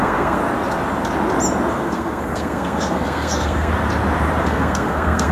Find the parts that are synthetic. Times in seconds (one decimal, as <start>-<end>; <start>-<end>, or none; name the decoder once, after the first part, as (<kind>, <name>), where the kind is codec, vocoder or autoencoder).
0.0-0.4 (codec, SNAC); 1.7-3.7; 4.4-5.3